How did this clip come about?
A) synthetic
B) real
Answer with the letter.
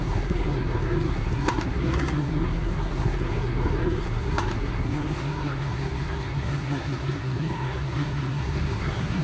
A